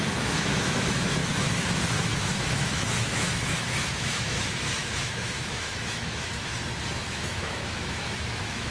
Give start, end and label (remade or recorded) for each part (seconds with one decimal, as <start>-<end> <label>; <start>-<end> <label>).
0.0-6.5 remade; 6.5-7.0 recorded; 7.0-8.7 remade